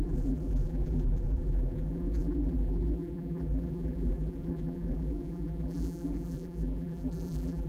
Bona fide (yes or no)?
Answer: no